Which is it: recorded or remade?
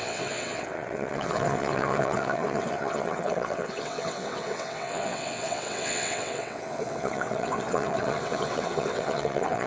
remade